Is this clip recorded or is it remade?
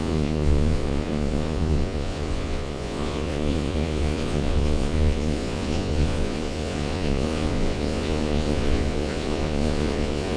remade